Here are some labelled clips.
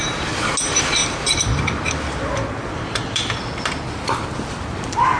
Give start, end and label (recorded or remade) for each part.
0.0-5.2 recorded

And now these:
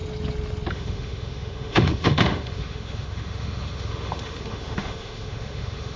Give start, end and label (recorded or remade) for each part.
0.0-0.7 recorded; 0.7-6.0 remade

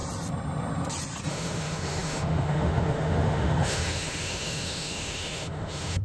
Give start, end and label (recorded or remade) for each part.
0.0-1.3 recorded; 1.3-6.0 remade

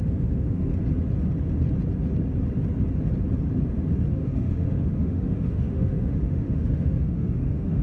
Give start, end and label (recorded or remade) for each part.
0.0-0.7 remade; 0.7-4.1 recorded; 4.1-7.8 remade

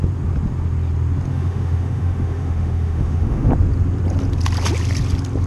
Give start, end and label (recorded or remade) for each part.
0.0-1.3 recorded; 1.3-3.5 remade; 3.5-5.5 recorded

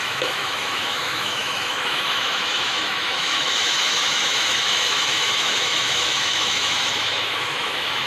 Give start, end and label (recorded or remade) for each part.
0.0-8.1 remade